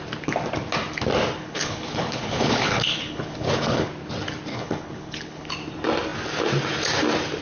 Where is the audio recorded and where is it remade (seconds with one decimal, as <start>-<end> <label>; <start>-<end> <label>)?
0.0-1.4 recorded; 1.4-3.9 remade; 3.9-4.5 recorded; 4.5-5.5 remade; 5.5-7.4 recorded